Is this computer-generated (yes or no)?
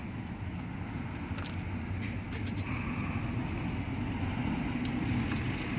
no